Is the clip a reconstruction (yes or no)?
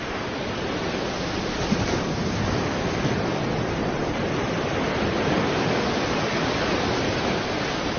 no